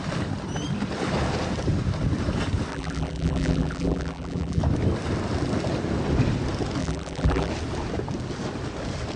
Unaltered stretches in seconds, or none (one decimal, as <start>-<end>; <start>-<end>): 0.0-2.7; 4.6-6.8; 7.5-9.2